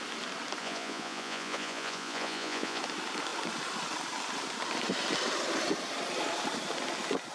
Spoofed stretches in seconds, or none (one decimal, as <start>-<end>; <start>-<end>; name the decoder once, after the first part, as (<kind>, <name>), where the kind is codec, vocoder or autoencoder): 0.6-2.8 (vocoder, Vocos)